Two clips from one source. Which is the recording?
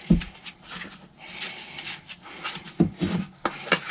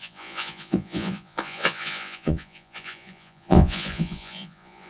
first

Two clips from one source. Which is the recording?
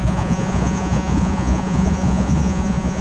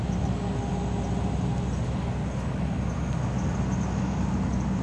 second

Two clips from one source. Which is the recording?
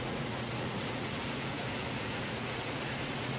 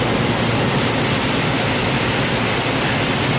second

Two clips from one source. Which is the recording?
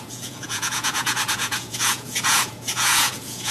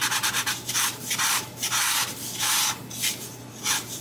second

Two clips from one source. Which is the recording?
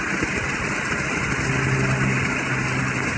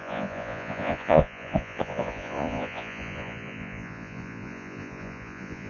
first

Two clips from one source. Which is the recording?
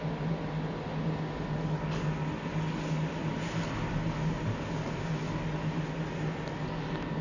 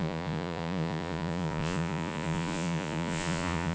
first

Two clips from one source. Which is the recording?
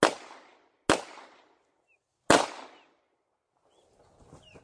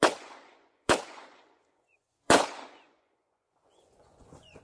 first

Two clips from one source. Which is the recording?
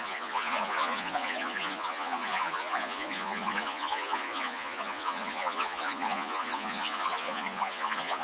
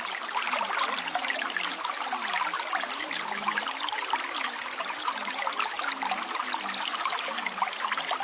second